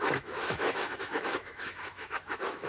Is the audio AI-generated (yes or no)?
yes